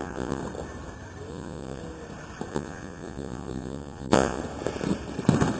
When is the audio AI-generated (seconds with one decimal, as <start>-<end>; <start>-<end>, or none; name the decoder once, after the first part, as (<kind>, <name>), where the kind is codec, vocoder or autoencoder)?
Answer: 0.0-0.4 (vocoder, Vocos); 1.3-1.8; 2.5-4.4